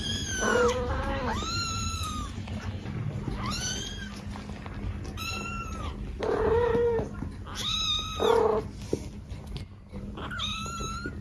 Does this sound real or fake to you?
real